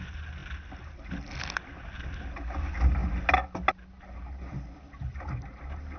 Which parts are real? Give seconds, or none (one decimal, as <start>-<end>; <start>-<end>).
0.0-6.0